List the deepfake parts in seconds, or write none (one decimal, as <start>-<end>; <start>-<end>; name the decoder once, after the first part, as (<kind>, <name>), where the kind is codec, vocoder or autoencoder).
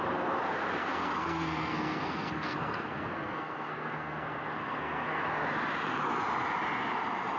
0.8-5.2 (codec, SNAC)